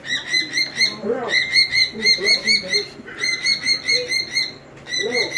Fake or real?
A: real